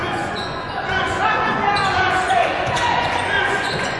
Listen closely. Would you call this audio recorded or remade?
remade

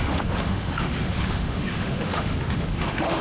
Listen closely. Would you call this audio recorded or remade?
remade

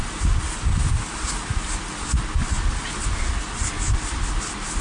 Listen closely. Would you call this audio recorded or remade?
recorded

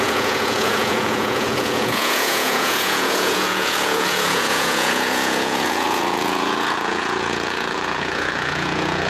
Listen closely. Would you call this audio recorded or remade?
remade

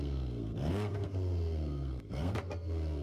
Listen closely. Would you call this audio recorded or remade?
remade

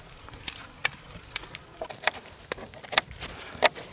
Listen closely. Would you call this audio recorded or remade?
recorded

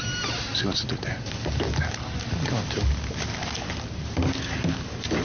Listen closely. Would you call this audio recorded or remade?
recorded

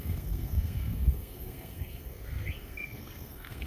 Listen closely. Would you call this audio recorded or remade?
remade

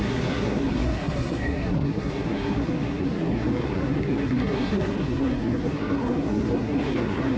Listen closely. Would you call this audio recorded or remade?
remade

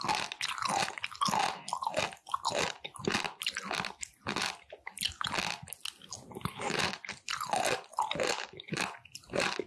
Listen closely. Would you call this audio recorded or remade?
recorded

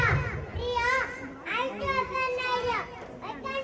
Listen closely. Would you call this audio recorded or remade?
recorded